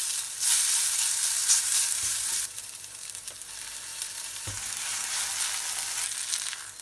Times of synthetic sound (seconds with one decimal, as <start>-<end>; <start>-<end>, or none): 1.4-3.3; 3.9-5.2